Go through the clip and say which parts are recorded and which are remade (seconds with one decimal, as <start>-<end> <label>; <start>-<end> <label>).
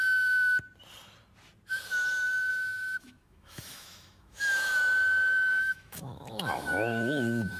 0.0-2.5 recorded; 2.5-4.8 remade; 4.8-5.5 recorded; 5.5-7.6 remade